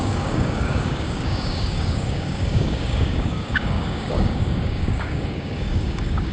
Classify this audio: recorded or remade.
remade